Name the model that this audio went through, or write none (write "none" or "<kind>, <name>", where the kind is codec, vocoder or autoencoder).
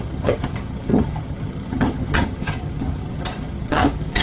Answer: vocoder, HiFi-GAN